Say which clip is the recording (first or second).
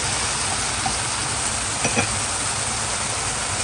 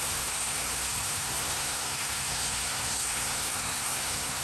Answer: first